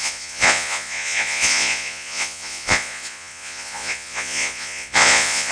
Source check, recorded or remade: remade